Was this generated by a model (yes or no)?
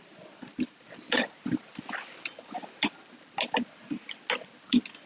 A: no